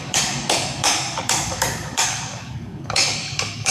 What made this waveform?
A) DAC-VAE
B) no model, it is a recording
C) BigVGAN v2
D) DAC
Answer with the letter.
D